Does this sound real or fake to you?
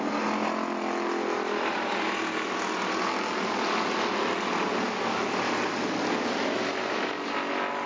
real